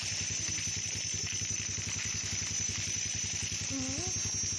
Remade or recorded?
recorded